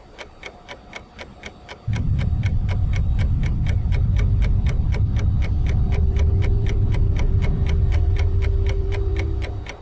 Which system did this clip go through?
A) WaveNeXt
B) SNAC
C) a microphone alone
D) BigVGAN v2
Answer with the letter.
D